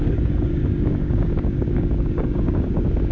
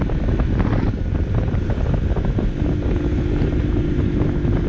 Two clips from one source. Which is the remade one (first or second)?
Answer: first